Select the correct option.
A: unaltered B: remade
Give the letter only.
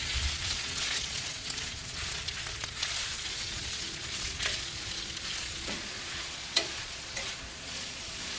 B